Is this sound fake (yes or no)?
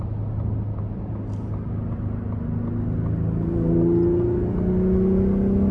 no